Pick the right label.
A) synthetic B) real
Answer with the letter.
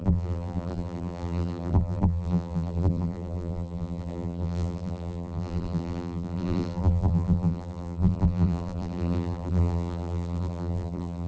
A